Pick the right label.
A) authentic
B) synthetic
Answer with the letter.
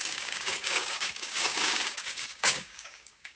B